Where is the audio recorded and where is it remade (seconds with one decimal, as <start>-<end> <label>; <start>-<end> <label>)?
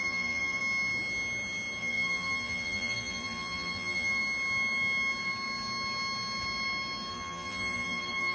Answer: 0.0-0.6 remade; 0.6-1.8 recorded; 1.8-4.2 remade; 4.2-7.1 recorded; 7.1-8.3 remade